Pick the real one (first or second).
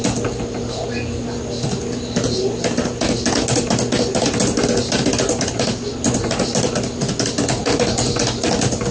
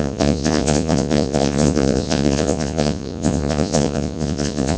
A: first